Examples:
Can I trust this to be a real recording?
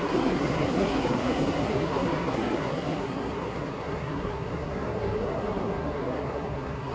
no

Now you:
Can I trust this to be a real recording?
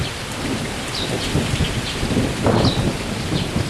yes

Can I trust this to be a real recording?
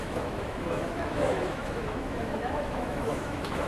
no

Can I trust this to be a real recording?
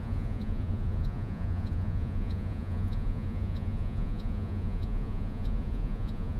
no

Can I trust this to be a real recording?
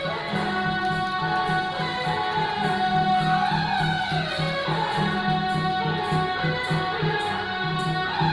yes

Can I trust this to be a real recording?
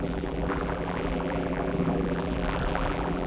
no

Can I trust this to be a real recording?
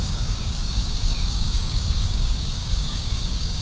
no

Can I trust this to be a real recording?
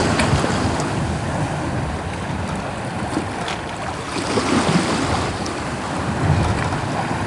yes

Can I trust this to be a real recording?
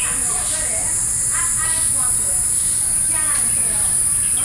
yes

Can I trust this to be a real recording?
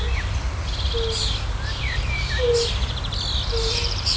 yes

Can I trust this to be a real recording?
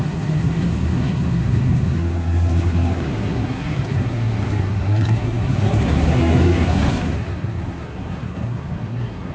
no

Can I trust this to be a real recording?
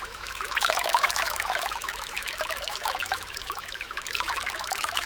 no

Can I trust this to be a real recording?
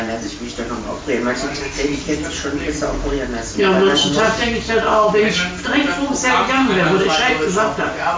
yes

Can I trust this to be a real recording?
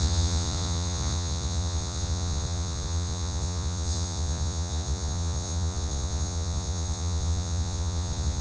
no